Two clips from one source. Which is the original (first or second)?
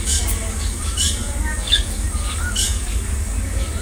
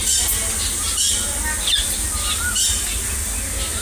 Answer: second